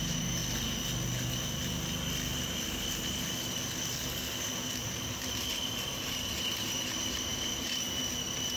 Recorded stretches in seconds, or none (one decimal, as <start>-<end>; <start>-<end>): 0.4-4.8